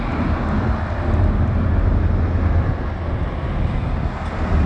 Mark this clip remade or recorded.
recorded